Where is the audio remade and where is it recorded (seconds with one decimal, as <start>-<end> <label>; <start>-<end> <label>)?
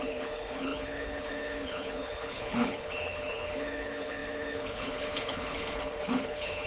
0.0-6.7 remade